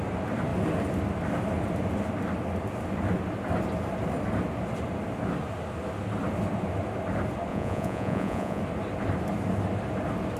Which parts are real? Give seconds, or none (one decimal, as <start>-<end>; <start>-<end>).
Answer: 0.0-7.5; 8.6-10.4